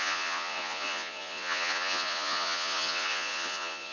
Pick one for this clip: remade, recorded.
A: remade